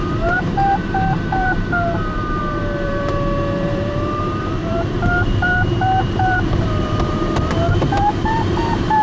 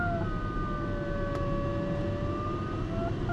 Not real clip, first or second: first